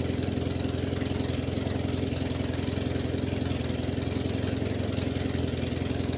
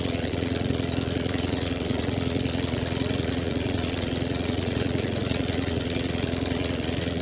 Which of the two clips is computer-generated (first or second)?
second